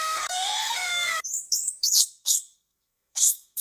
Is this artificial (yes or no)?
yes